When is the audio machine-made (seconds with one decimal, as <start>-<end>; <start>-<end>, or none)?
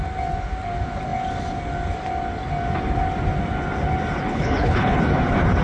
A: 4.3-5.0